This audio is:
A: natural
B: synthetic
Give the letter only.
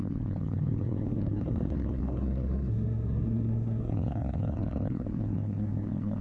B